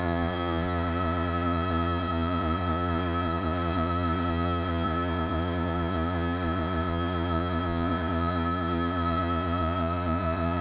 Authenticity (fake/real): fake